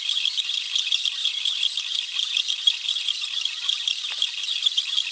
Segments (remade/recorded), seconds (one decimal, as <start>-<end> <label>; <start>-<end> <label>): 0.0-5.1 recorded